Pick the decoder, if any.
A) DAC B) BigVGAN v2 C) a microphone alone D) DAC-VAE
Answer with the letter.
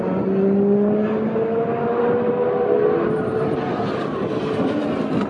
C